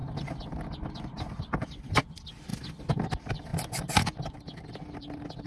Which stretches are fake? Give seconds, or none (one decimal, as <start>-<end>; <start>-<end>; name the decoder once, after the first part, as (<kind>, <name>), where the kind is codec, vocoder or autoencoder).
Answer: none